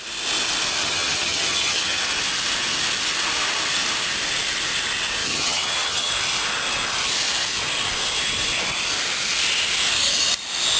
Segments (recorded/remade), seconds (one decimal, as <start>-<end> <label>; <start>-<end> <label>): 0.0-0.8 recorded; 0.8-2.0 remade; 2.0-5.2 recorded; 5.2-6.1 remade; 6.1-10.8 recorded